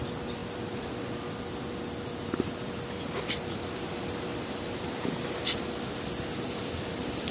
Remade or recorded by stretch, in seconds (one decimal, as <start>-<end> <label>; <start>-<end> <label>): 0.0-7.3 remade